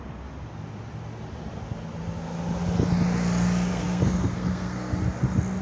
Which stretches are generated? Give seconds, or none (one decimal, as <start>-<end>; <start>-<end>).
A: 3.7-5.0